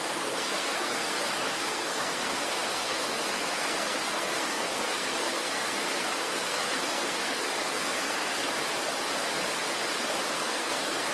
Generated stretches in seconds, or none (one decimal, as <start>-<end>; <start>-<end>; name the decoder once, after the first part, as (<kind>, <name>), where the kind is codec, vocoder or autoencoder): 0.0-8.3 (codec, SNAC); 10.3-11.1